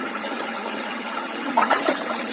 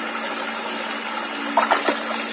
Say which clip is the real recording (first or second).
second